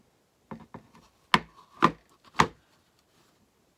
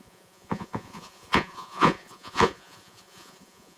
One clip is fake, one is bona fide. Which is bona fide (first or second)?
first